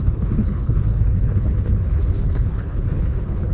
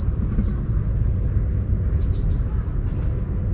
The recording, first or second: second